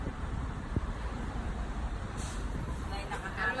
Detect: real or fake fake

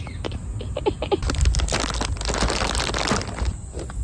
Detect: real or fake real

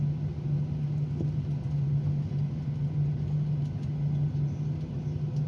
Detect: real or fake real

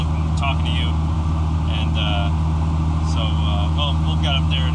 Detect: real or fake real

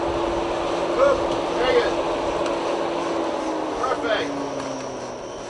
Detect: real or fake real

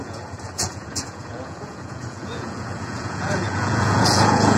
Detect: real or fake fake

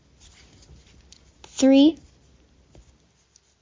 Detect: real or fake real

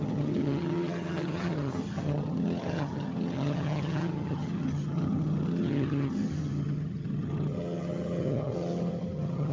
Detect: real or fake fake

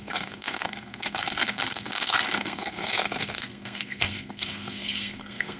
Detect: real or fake fake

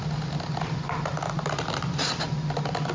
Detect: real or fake real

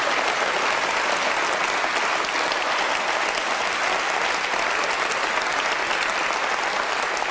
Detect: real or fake real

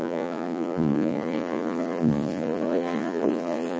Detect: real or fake fake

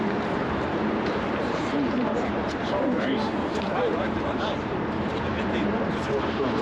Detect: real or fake fake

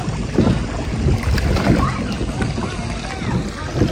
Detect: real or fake real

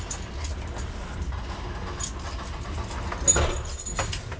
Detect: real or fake real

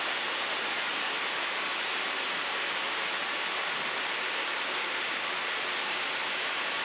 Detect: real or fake real